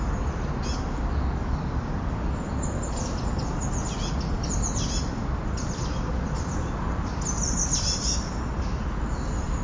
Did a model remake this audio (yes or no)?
no